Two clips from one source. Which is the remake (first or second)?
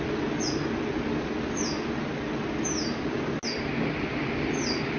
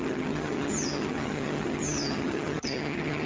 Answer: second